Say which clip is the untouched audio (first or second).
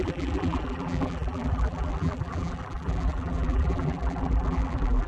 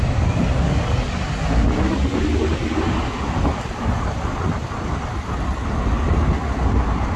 second